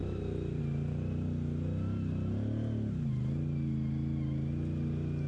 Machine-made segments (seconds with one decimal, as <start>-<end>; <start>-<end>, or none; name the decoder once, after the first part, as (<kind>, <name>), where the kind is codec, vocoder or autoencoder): 0.0-0.6 (vocoder, BigVGAN v2)